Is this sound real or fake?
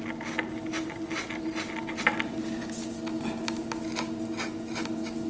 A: real